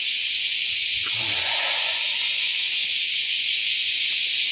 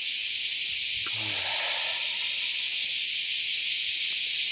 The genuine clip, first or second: second